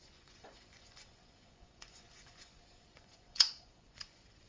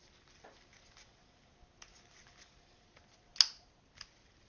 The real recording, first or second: second